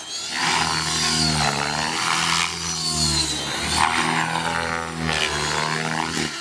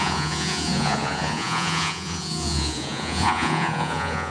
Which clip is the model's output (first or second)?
second